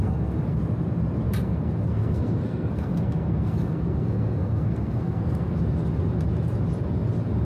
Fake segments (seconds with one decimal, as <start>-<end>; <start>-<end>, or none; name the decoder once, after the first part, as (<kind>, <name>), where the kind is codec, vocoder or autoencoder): 0.0-0.6 (codec, SNAC); 1.4-5.6